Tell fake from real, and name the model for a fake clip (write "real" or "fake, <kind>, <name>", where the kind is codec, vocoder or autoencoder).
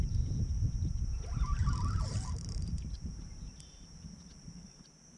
fake, vocoder, BigVGAN v2